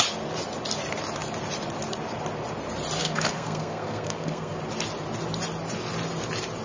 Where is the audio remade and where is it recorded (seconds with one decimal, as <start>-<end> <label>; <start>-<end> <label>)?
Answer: 0.0-3.0 recorded; 3.0-4.6 remade; 4.6-6.6 recorded

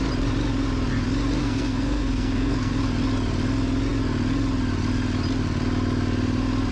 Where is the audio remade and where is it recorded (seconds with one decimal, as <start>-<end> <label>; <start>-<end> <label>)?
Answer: 0.0-1.4 recorded; 1.4-2.7 remade; 2.7-6.7 recorded

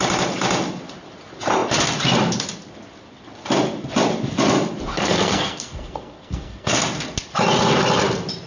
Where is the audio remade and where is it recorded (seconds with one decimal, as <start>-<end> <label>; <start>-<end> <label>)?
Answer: 0.0-4.9 recorded; 4.9-6.7 remade; 6.7-8.5 recorded

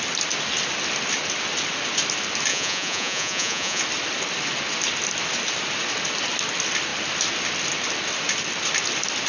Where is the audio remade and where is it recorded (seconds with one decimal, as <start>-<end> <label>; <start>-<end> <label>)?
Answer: 0.0-2.5 recorded; 2.5-3.8 remade; 3.8-9.3 recorded

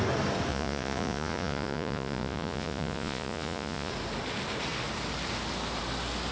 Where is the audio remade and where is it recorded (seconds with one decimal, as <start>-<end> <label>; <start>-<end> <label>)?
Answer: 0.0-0.5 recorded; 0.5-3.9 remade; 3.9-6.3 recorded

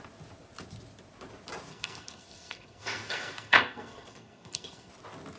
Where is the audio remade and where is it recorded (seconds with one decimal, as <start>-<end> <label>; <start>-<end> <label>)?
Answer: 0.0-1.7 recorded; 1.7-4.9 remade; 4.9-5.4 recorded

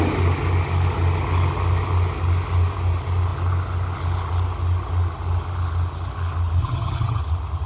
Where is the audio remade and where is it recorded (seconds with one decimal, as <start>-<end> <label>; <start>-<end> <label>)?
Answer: 0.0-6.6 recorded; 6.6-7.2 remade; 7.2-7.7 recorded